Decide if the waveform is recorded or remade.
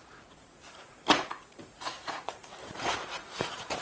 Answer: remade